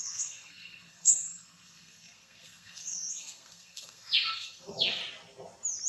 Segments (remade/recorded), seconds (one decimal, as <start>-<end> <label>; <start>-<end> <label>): 0.0-5.0 remade; 5.0-5.9 recorded